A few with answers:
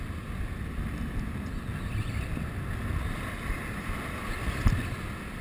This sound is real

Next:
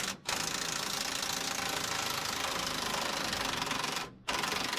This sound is real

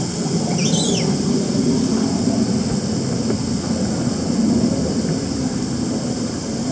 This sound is real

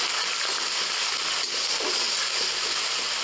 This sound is real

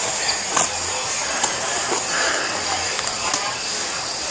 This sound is real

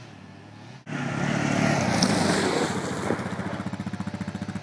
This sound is real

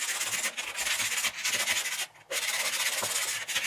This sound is real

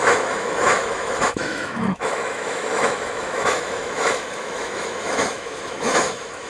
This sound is fake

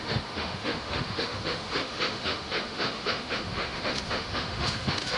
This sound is fake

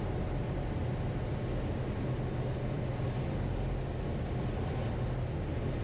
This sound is real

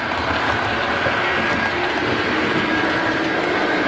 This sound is real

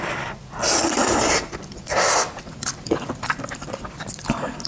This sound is real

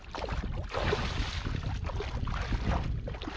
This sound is real